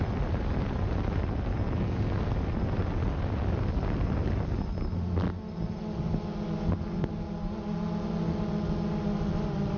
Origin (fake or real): real